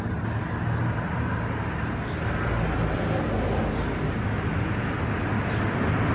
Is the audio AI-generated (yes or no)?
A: no